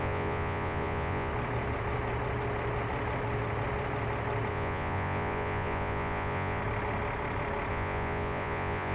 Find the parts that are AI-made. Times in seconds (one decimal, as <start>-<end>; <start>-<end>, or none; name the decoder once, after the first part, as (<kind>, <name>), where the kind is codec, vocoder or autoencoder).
0.0-1.3 (vocoder, Vocos); 4.5-6.6; 7.7-8.9